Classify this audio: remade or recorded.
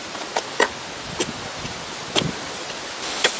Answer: recorded